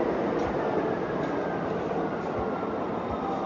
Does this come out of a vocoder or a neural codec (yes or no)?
no